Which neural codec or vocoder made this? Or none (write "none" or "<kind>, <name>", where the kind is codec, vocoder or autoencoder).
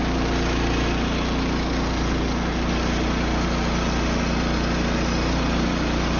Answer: none